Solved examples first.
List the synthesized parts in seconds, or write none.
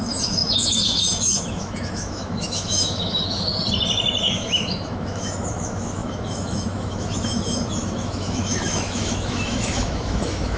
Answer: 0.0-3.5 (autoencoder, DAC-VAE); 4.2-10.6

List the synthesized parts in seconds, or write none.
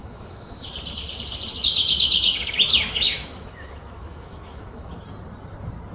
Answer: 0.0-0.7 (autoencoder, DAC-VAE); 1.5-5.0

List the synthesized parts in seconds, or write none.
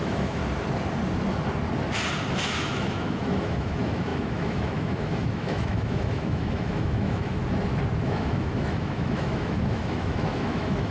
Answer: 0.0-0.4 (autoencoder, DAC-VAE); 2.3-7.4; 8.0-10.9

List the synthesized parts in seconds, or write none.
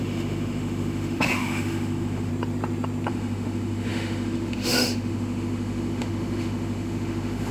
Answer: 0.0-2.3 (autoencoder, DAC-VAE); 3.1-7.5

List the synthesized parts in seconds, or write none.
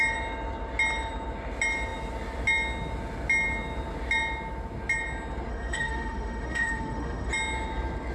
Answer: 5.5-7.3 (autoencoder, DAC-VAE)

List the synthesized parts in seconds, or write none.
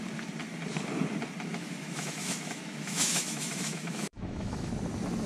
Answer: 1.5-4.7 (autoencoder, DAC-VAE)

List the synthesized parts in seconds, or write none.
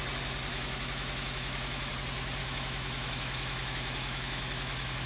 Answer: 0.5-1.9 (autoencoder, DAC-VAE); 2.4-5.1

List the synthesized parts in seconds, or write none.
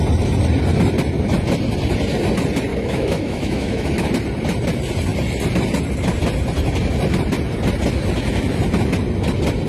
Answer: 2.7-4.1 (autoencoder, DAC-VAE)